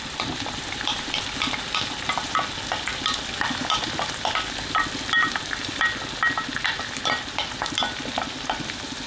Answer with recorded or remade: recorded